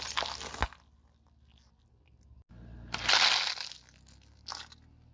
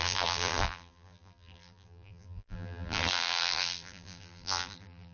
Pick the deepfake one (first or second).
second